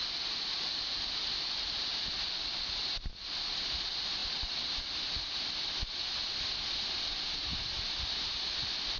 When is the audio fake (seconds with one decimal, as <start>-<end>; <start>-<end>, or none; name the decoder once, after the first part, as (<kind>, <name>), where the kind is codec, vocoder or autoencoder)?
none